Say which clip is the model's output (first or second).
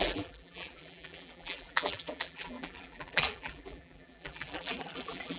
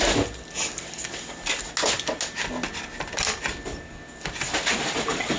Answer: first